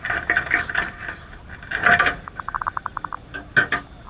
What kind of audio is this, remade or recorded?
recorded